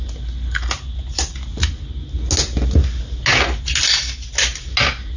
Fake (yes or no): no